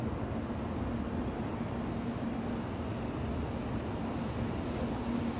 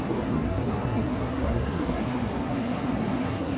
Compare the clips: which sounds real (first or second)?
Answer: first